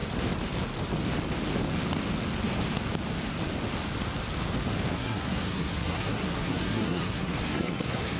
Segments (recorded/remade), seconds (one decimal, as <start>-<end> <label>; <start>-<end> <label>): 0.0-4.9 recorded; 4.9-8.2 remade